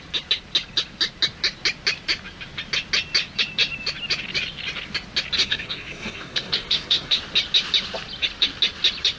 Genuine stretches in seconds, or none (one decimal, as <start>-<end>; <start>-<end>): 0.0-5.4; 7.2-9.2

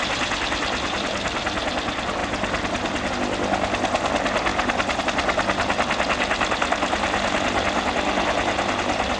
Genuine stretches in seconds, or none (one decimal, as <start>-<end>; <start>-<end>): 0.0-9.2

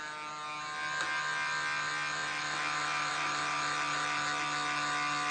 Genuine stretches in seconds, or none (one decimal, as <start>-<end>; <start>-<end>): 0.0-5.3

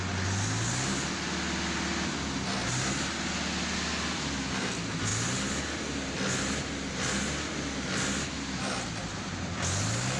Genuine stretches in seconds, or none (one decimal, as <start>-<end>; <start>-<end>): 0.0-10.2

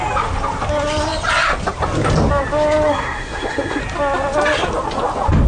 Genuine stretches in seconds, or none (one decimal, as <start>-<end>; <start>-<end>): 0.0-2.9; 3.8-5.5

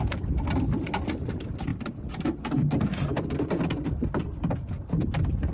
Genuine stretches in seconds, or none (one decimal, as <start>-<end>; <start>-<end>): 0.0-5.5

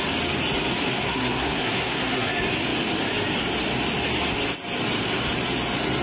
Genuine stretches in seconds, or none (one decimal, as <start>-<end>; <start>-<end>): 0.0-1.0; 2.3-6.0

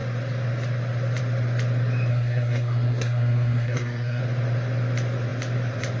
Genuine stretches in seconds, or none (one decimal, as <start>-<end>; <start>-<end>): 0.0-2.1; 4.2-6.0